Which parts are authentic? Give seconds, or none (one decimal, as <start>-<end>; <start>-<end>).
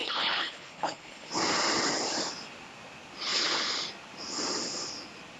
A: 1.3-5.4